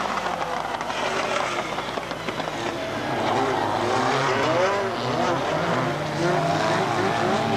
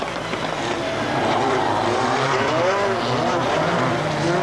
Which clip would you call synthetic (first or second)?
second